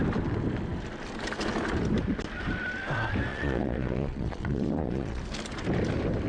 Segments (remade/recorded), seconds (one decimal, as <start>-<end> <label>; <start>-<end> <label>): 0.0-3.3 recorded; 3.3-5.2 remade; 5.2-6.3 recorded